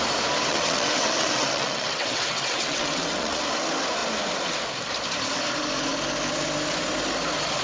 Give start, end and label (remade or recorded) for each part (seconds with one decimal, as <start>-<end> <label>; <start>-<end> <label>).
0.0-0.5 recorded; 0.5-3.4 remade; 3.4-7.6 recorded